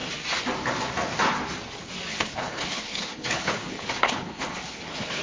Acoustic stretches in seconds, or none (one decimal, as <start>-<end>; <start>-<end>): 0.0-2.1